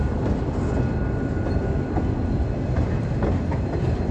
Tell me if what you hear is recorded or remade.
recorded